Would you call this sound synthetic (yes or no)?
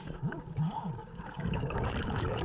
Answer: yes